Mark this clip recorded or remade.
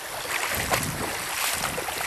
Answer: recorded